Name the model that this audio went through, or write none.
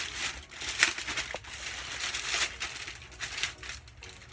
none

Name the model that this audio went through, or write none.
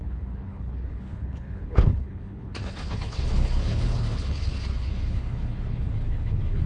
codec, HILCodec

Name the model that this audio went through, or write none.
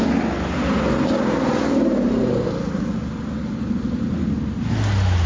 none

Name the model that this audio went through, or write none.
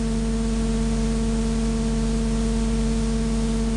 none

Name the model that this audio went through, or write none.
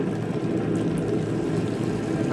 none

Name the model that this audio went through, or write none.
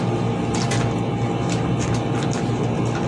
none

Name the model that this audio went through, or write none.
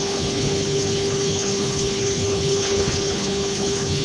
codec, HILCodec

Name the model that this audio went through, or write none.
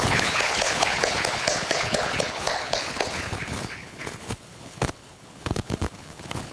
codec, HILCodec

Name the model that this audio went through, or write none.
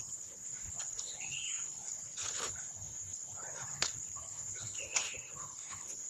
codec, HILCodec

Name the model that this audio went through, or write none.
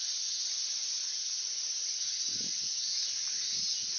none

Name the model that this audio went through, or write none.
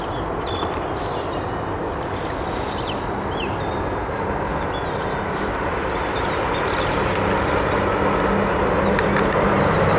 none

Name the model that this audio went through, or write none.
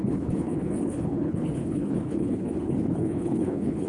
codec, HILCodec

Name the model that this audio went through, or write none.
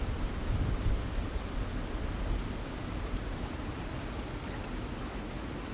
none